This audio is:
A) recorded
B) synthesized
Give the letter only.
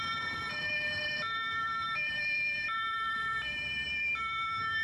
A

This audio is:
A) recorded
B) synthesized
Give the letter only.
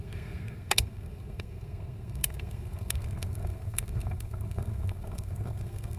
B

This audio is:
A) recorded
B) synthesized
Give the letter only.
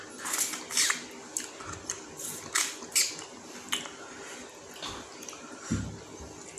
A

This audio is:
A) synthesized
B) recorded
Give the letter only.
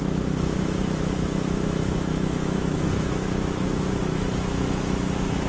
A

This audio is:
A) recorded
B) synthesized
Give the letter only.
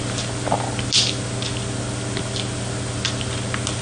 A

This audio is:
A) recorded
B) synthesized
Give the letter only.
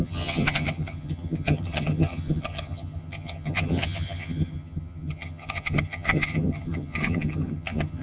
B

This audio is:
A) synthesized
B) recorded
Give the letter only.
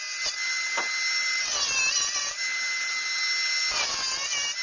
B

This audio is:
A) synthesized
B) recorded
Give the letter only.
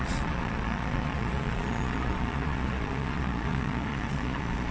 A